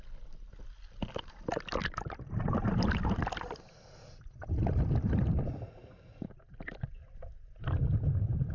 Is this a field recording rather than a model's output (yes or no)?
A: yes